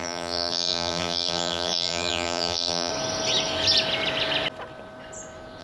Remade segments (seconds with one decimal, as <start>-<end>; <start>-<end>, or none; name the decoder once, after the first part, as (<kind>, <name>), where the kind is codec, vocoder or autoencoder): 0.0-2.9 (vocoder, BigVGAN v2)